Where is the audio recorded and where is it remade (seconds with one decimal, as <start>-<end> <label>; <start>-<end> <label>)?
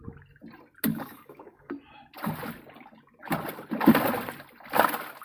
0.0-0.9 recorded; 0.9-1.7 remade; 1.7-5.2 recorded